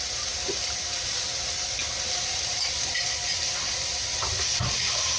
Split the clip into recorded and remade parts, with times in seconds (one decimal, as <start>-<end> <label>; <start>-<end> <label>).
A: 0.0-1.8 remade; 1.8-2.4 recorded; 2.4-5.2 remade